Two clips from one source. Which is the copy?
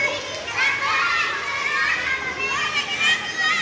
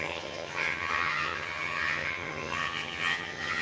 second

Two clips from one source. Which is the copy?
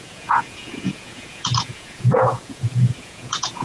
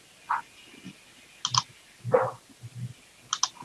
first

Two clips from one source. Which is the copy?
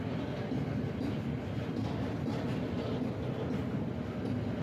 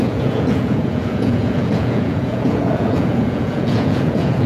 second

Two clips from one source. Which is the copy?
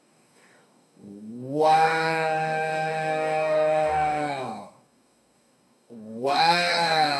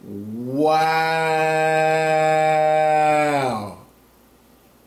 first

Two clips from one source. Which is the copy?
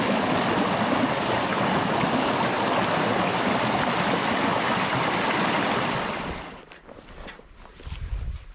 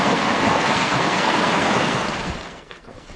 second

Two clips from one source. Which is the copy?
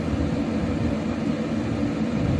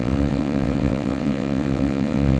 second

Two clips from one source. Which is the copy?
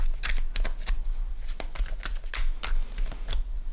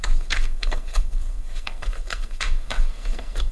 second